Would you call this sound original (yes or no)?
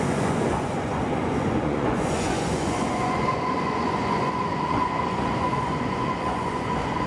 no